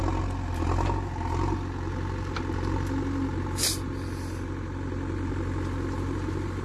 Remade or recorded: recorded